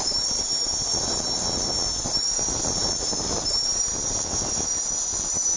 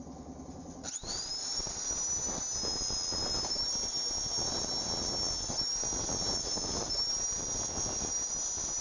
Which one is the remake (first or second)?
first